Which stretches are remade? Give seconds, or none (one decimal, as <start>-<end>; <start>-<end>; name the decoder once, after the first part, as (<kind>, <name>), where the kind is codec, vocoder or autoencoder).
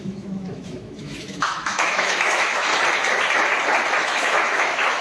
0.0-2.7 (autoencoder, DAC-VAE); 3.9-5.0